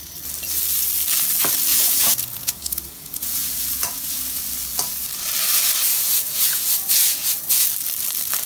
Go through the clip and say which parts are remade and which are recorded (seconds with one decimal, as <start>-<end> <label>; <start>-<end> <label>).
0.0-1.7 recorded; 1.7-4.4 remade; 4.4-5.9 recorded; 5.9-7.7 remade; 7.7-8.5 recorded